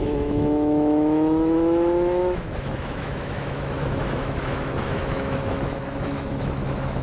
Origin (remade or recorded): remade